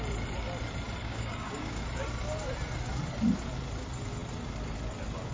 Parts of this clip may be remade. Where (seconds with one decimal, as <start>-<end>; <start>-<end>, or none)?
1.0-1.8